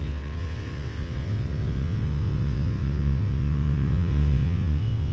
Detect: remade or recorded remade